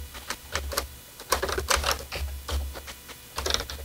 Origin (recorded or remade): recorded